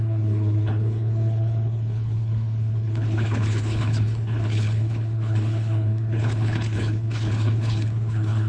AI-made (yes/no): yes